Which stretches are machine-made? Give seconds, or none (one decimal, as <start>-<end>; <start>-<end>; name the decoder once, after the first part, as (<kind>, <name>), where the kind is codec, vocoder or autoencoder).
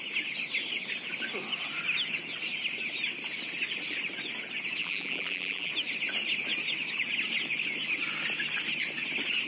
4.8-5.7 (vocoder, BigVGAN v2)